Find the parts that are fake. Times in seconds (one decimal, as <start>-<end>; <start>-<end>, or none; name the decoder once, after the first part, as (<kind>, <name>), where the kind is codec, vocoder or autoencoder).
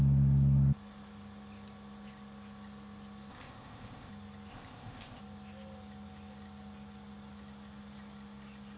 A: 3.3-4.1 (codec, ZipCodec); 4.5-5.2